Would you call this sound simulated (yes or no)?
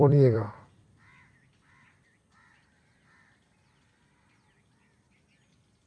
yes